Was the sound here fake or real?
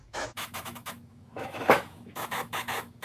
fake